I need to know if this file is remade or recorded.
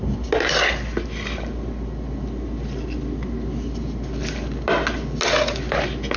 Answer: recorded